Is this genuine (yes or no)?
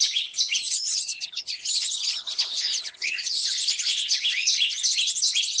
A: no